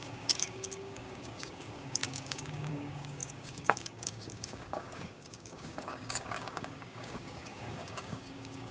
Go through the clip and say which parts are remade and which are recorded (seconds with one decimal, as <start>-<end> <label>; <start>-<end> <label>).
0.0-8.7 remade